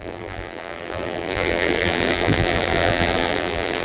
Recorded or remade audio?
remade